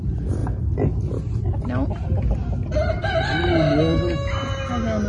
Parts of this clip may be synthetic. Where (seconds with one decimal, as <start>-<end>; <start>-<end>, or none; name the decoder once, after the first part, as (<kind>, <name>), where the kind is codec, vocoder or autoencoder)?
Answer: none